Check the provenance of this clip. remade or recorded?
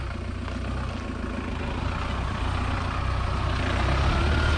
recorded